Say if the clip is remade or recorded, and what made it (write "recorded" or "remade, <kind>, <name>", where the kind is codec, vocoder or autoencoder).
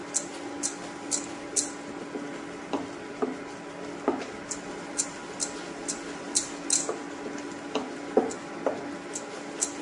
recorded